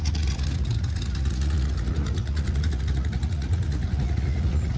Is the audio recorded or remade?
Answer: remade